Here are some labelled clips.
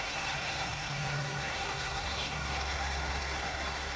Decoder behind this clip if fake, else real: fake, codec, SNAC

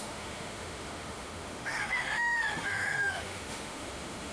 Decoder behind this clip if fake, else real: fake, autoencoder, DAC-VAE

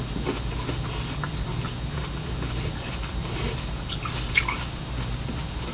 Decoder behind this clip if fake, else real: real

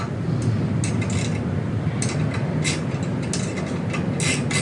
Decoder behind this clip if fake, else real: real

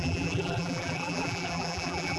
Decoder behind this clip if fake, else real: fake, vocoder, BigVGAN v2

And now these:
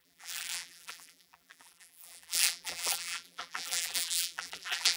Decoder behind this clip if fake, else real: fake, vocoder, BigVGAN v2